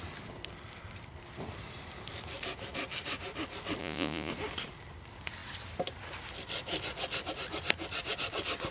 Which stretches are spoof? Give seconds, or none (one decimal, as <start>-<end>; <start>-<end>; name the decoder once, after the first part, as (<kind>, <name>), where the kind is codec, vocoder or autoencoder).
3.8-4.3 (vocoder, Vocos)

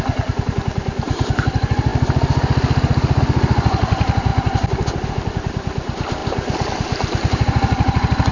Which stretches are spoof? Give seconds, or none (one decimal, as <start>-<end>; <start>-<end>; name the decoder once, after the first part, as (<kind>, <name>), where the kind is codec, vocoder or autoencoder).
none

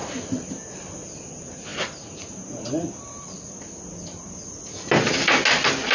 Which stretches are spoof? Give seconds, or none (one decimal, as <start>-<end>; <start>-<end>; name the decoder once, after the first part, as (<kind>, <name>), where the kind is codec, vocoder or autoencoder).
none

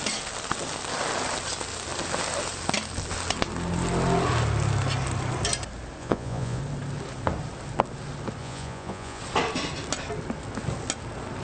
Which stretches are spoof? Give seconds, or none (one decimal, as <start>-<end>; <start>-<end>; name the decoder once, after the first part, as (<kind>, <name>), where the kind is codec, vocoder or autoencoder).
6.0-6.6 (vocoder, Vocos); 8.4-9.2

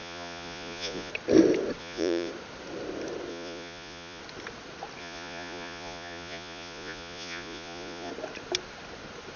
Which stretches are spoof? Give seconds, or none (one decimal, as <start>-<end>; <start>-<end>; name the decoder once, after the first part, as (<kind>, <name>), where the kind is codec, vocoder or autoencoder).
0.0-1.1 (vocoder, Vocos); 1.8-2.3; 3.3-4.2; 5.0-8.1

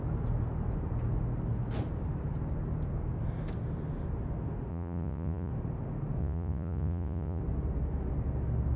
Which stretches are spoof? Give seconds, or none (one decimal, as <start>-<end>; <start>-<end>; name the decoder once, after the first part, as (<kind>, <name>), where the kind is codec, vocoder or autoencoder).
4.7-5.5 (vocoder, Vocos); 6.2-7.4

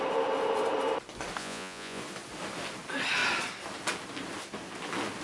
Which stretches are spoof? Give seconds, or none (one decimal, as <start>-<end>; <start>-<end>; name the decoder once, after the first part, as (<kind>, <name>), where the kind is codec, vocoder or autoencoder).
1.4-2.0 (vocoder, Vocos)

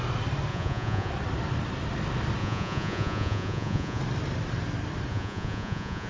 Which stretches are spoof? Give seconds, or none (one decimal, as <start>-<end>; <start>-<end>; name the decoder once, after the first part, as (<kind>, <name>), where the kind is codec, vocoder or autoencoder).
0.5-1.1 (vocoder, Vocos); 2.4-4.0; 5.1-6.1